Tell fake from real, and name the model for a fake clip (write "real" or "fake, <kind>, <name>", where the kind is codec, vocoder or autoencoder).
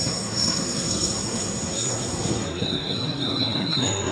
fake, codec, SNAC